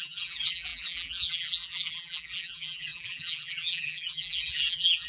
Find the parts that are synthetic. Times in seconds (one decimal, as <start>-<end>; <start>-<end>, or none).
0.0-5.1